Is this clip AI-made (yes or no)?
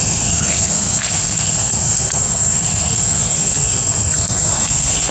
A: yes